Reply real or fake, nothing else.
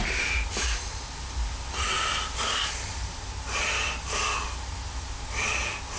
real